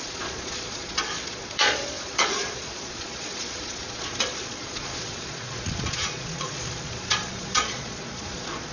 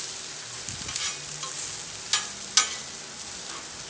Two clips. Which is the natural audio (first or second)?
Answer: second